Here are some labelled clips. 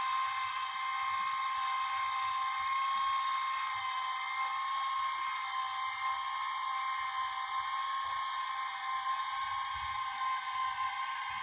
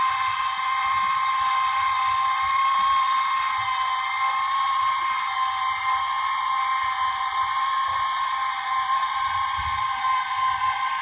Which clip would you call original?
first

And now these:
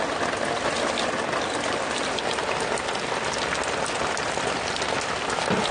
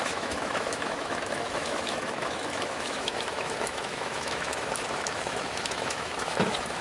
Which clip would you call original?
first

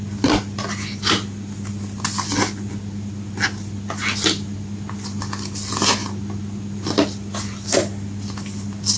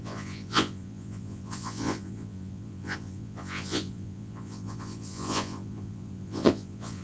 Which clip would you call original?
first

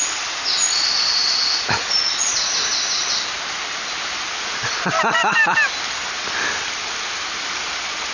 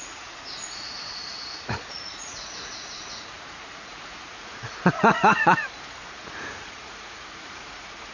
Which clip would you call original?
first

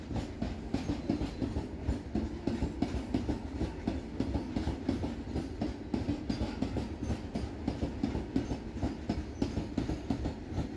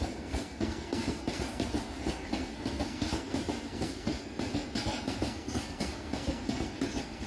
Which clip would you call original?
first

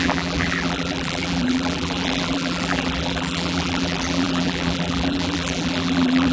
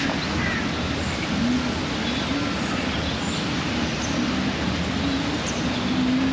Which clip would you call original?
second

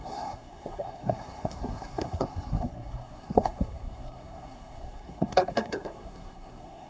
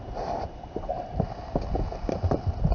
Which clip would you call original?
second